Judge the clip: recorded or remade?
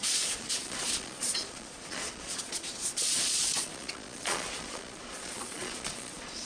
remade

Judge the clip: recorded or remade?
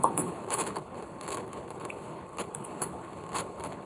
remade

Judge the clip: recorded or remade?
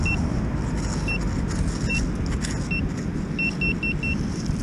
recorded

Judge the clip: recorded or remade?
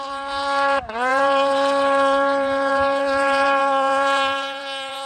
remade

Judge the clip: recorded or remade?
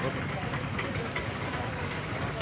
remade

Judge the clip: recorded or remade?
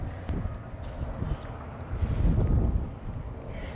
recorded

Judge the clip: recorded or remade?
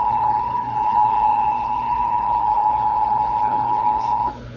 remade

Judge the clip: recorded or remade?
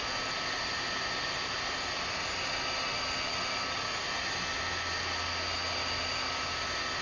recorded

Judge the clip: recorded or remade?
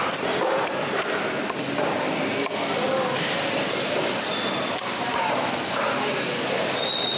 recorded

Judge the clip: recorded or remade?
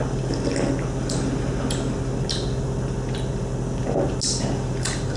recorded